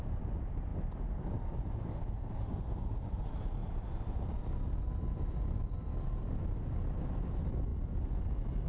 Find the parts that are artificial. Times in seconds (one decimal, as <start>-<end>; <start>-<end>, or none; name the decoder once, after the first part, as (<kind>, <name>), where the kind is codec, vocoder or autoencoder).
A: 0.7-1.7 (vocoder, BigVGAN v2)